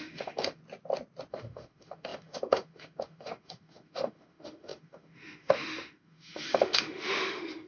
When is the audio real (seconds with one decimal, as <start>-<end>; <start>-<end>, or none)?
0.6-1.3